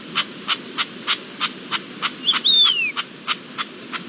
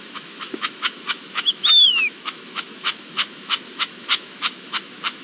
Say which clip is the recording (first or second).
first